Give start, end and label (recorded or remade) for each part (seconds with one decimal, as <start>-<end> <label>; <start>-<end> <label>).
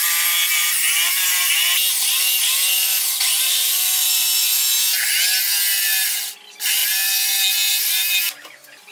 0.0-2.7 recorded; 2.7-4.7 remade; 4.7-8.9 recorded